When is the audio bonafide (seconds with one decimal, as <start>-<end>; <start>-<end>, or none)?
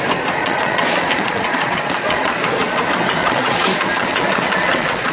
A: 0.0-0.4; 2.8-3.2